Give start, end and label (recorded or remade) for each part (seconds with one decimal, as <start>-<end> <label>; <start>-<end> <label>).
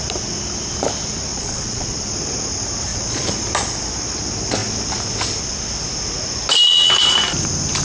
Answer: 0.0-1.3 recorded; 1.3-2.0 remade; 2.0-2.9 recorded; 2.9-3.5 remade; 3.5-7.8 recorded